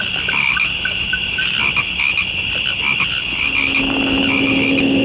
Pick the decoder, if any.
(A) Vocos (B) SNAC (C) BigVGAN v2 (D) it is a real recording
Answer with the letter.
D